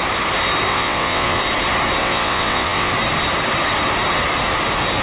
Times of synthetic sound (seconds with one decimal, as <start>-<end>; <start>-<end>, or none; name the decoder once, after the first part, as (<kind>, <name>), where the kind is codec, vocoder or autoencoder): 0.7-1.4 (vocoder, WaveNeXt); 2.0-2.9